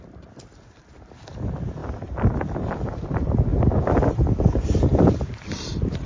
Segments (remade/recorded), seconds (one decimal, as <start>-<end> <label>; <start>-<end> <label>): 0.0-3.5 remade; 3.5-4.4 recorded; 4.4-6.1 remade